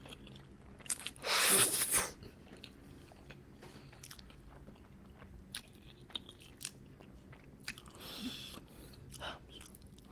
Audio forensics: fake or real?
real